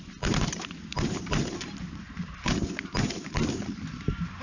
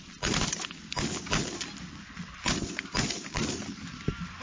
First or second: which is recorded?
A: second